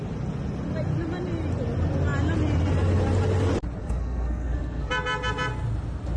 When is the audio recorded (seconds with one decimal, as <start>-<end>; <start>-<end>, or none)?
0.0-3.8; 4.9-6.2